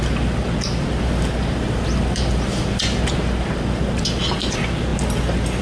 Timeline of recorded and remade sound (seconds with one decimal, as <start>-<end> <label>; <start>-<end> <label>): 0.0-5.6 recorded